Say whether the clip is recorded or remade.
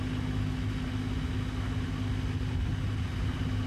recorded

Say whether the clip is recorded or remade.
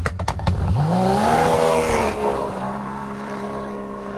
remade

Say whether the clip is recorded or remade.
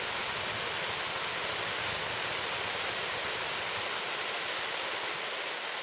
recorded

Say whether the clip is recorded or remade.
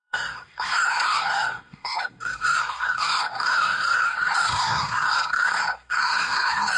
remade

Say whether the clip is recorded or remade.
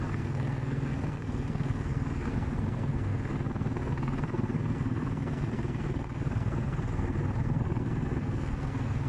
remade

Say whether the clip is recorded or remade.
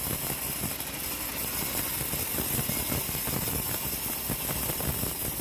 recorded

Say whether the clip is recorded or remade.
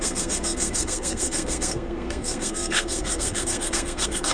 remade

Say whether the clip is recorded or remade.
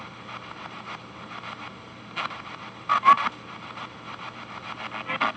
recorded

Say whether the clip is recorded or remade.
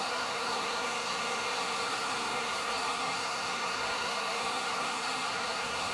remade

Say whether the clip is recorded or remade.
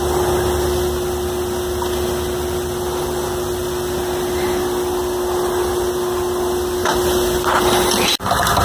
recorded